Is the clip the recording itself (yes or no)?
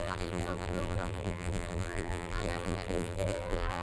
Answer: no